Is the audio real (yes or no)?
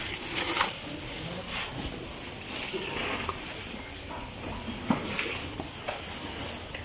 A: yes